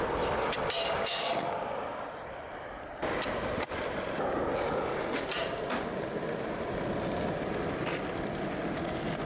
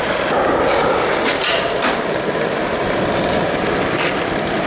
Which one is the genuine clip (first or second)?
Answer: first